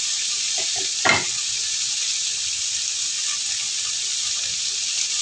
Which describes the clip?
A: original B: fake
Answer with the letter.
A